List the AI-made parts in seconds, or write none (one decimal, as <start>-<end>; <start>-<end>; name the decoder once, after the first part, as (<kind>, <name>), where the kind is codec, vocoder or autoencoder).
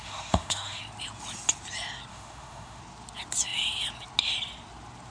0.0-0.8 (autoencoder, DAC-VAE); 2.1-2.8